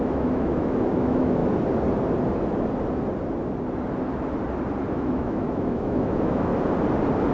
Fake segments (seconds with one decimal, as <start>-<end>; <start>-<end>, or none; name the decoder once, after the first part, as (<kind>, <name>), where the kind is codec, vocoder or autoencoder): 0.0-1.4 (autoencoder, DAC-VAE); 4.9-6.5